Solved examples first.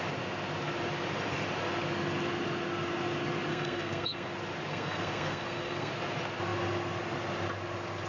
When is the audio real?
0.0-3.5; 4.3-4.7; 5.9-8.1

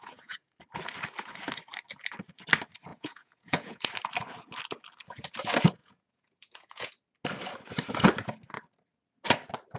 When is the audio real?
0.5-2.9; 3.9-5.8; 6.9-9.8

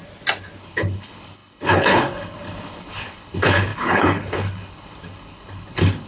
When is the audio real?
0.0-0.6

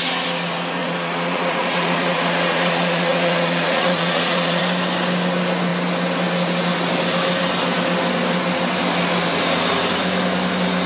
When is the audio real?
0.0-0.8; 4.6-10.9

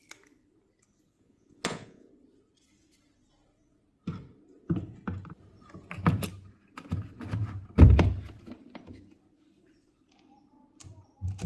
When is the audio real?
0.0-1.1; 2.1-11.5